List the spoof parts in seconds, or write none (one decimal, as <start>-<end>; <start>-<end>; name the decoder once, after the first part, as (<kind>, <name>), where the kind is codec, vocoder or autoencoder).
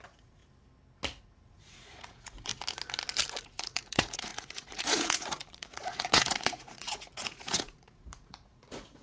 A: 0.0-0.4 (vocoder, Vocos); 1.2-2.5; 3.4-9.0